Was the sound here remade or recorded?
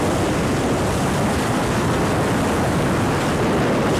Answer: recorded